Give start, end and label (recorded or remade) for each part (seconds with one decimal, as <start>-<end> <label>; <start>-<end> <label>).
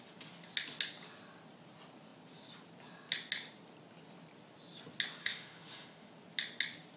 0.0-5.2 recorded; 5.2-6.1 remade; 6.1-7.0 recorded